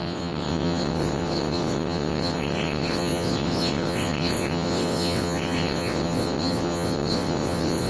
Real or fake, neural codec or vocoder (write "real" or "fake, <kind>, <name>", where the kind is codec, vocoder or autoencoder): fake, vocoder, WaveNeXt